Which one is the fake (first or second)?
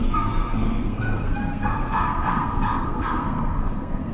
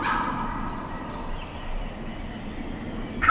first